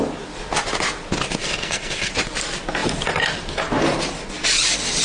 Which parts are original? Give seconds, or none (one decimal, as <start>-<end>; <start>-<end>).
0.0-1.4; 2.1-5.0